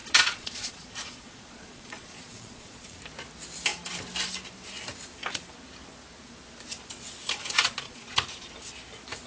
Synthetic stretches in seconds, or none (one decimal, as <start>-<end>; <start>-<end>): 0.0-3.0; 7.4-8.1